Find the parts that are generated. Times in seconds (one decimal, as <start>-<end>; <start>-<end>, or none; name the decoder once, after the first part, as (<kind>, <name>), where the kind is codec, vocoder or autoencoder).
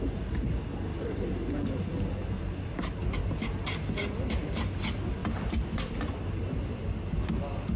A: 0.9-2.8 (vocoder, BigVGAN v2); 5.2-5.8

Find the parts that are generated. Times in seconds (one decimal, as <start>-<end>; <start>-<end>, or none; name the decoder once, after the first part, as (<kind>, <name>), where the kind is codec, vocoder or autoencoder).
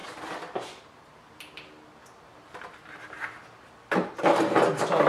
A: none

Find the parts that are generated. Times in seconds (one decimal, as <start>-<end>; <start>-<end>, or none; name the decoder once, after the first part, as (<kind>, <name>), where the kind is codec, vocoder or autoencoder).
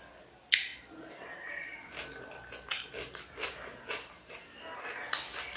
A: none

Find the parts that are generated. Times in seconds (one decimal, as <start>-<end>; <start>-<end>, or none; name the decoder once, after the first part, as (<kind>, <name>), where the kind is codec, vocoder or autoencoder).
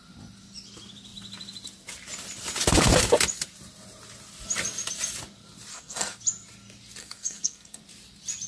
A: 5.7-6.2 (codec, SNAC); 7.0-7.8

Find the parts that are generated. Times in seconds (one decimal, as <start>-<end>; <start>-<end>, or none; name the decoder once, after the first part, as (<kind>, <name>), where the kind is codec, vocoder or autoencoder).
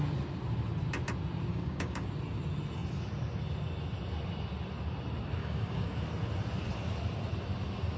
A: 1.5-2.1 (codec, DAC); 5.4-6.0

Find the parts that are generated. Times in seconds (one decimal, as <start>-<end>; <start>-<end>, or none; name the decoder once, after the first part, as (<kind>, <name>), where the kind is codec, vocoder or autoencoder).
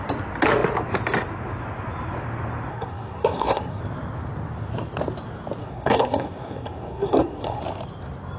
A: 2.7-3.8 (codec, SNAC); 5.6-7.6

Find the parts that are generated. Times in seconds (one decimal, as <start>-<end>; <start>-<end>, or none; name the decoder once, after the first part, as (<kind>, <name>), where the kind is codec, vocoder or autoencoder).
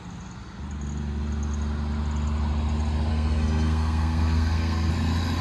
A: 3.1-4.9 (codec, SNAC)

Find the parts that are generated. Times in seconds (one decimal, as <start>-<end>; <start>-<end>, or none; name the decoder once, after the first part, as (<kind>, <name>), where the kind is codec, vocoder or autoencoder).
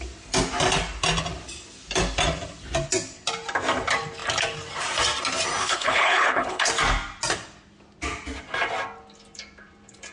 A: 5.6-6.7 (codec, HILCodec)